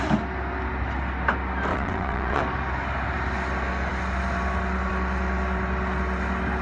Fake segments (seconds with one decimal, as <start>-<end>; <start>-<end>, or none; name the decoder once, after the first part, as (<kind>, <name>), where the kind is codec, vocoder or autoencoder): 1.7-2.4 (vocoder, WaveNeXt)